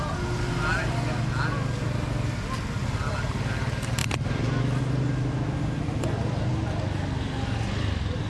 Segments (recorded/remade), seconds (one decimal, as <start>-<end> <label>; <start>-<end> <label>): 0.0-8.3 recorded